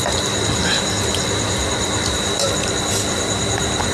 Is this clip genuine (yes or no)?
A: no